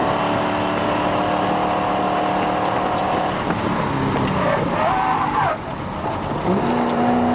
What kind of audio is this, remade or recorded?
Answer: recorded